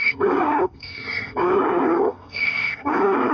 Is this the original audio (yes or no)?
no